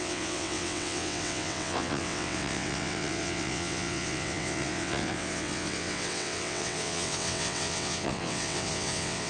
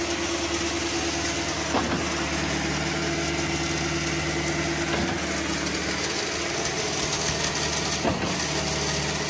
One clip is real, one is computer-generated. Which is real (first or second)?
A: second